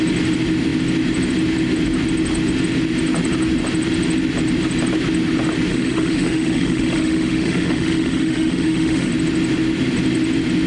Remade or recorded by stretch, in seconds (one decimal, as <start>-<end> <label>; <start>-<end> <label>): 0.0-5.7 recorded; 5.7-9.1 remade; 9.1-10.7 recorded